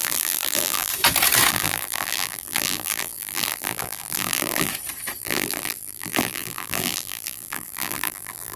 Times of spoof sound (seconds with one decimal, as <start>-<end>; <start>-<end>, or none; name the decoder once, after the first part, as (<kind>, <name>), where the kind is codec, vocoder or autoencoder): 0.0-0.9 (vocoder, BigVGAN v2); 1.5-4.7; 5.2-8.6